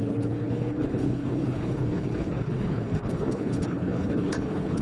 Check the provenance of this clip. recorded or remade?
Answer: remade